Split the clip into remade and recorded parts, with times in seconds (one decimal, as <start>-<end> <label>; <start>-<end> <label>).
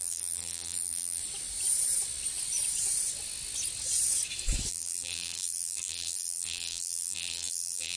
0.0-1.2 remade; 1.2-4.7 recorded; 4.7-8.0 remade